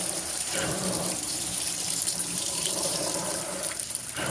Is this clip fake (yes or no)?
yes